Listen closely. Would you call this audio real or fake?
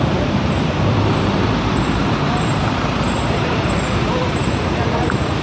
fake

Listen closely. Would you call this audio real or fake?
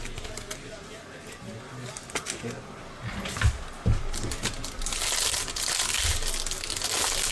real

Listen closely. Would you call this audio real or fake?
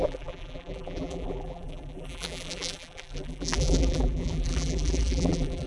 fake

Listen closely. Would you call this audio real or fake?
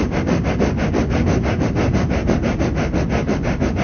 real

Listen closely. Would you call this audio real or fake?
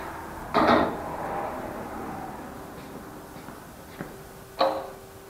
real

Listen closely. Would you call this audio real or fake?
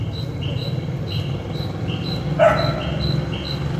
real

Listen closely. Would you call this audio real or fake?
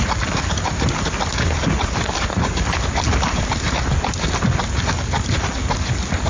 real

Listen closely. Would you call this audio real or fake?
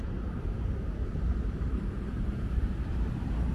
fake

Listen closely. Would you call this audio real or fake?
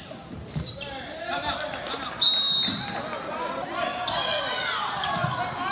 real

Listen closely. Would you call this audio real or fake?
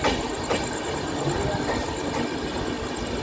real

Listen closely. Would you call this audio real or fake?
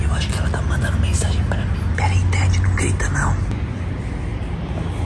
real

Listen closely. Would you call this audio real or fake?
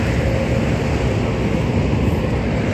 real